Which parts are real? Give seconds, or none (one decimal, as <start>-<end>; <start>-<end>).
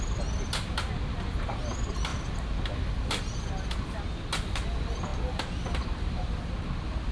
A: 0.0-7.1